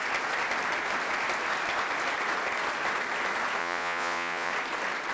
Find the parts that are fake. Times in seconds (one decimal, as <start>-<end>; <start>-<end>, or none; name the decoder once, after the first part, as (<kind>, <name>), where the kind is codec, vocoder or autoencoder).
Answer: 3.6-4.5 (vocoder, Vocos)